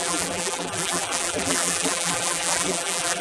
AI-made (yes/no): yes